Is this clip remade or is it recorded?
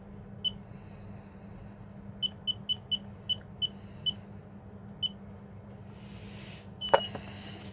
recorded